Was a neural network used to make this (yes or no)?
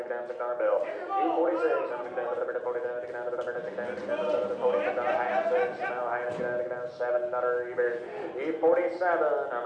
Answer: no